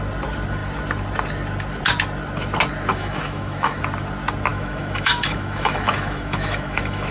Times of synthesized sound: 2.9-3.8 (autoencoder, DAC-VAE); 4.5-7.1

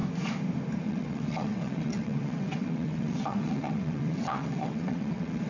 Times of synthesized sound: 0.8-5.5 (vocoder, WaveNeXt)

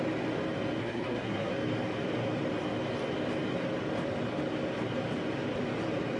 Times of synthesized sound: 0.8-1.5 (codec, SNAC)

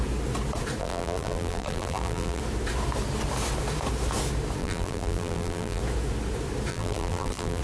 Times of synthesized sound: 0.8-2.4 (vocoder, BigVGAN v2); 4.6-5.8; 6.7-7.6

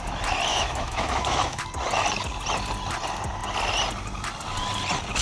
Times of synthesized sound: 0.5-1.6 (autoencoder, DAC-VAE)

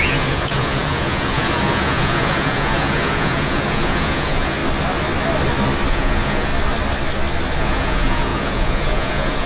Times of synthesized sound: 0.0-4.6 (vocoder, Vocos); 5.9-6.5; 7.6-9.5